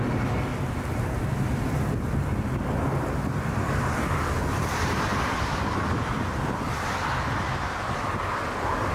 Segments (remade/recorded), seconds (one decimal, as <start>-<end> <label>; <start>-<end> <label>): 0.0-8.9 recorded